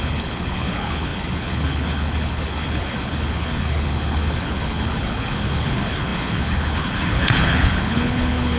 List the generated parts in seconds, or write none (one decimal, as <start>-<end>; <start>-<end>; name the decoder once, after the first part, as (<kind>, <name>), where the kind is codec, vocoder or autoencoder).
0.0-8.6 (codec, HILCodec)